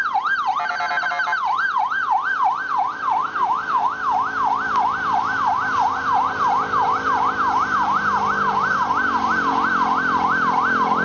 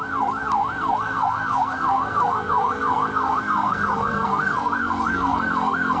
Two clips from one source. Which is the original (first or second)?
first